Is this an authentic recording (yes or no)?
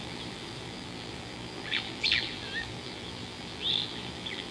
no